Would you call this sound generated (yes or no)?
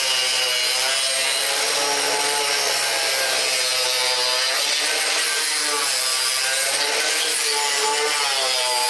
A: no